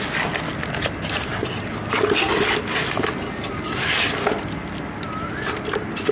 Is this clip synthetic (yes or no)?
no